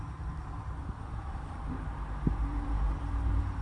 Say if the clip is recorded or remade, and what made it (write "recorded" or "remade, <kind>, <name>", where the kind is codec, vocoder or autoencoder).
remade, vocoder, BigVGAN v2